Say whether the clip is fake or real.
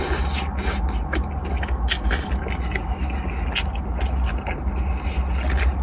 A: real